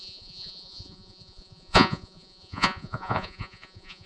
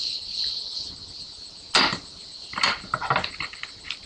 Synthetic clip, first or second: first